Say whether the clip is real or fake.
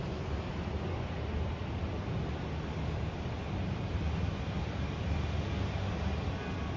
real